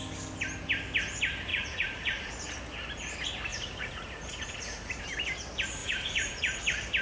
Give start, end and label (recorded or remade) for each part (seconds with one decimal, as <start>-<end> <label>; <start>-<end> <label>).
0.0-1.5 recorded; 1.5-2.3 remade; 2.3-3.5 recorded; 3.5-5.0 remade; 5.0-5.8 recorded; 5.8-6.6 remade; 6.6-7.0 recorded